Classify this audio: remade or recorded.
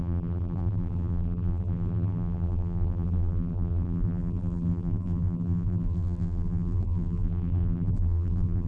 remade